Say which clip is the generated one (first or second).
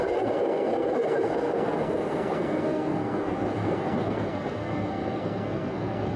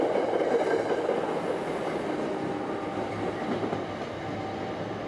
first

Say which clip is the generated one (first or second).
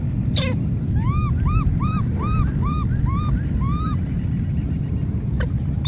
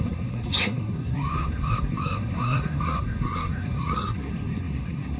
second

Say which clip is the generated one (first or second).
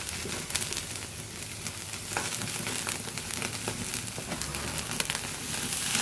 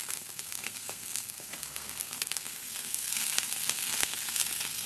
second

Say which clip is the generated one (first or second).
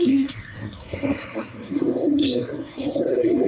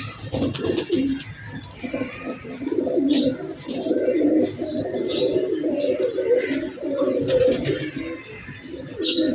first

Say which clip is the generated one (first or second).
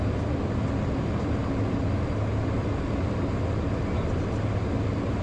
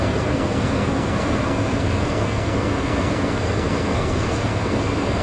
second